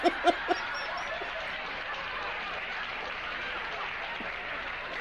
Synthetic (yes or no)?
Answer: no